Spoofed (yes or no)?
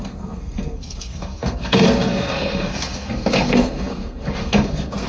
yes